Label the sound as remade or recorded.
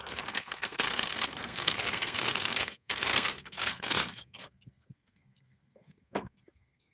remade